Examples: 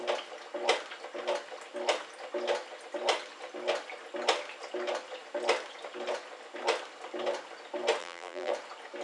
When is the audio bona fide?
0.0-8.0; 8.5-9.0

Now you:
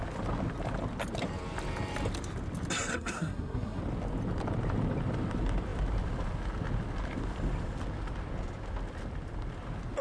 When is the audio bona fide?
0.0-2.9; 3.8-10.0

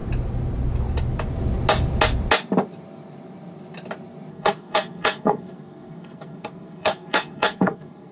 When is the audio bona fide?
0.0-4.3